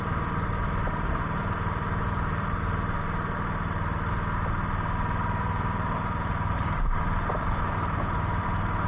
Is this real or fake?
fake